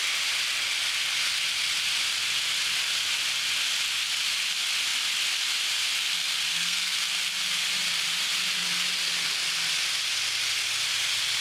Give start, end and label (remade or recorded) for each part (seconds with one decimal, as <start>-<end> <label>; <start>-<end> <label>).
0.0-6.5 recorded; 6.5-7.0 remade; 7.0-11.4 recorded